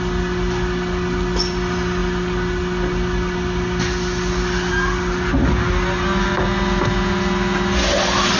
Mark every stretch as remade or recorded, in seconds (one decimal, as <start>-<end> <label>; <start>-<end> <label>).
0.0-8.4 recorded